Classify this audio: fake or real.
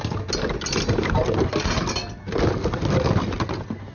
real